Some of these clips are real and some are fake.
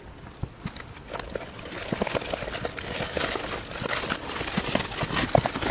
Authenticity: real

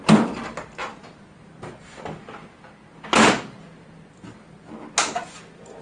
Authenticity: real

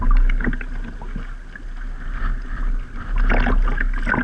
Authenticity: real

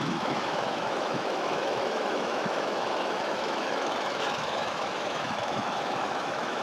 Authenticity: fake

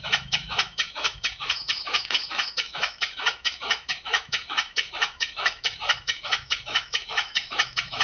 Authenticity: fake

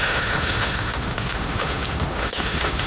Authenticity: fake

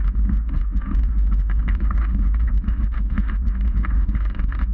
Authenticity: fake